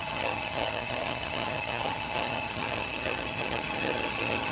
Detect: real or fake fake